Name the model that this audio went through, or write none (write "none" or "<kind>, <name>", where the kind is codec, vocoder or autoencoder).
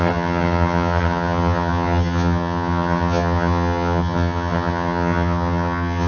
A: vocoder, HiFi-GAN